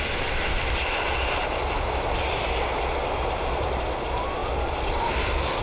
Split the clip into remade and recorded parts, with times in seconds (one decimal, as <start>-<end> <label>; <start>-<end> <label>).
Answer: 0.0-5.6 remade